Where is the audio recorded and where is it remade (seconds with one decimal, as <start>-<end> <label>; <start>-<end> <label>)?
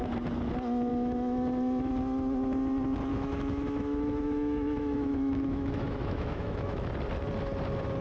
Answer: 0.0-0.9 recorded; 0.9-1.9 remade; 1.9-3.1 recorded; 3.1-6.9 remade; 6.9-8.0 recorded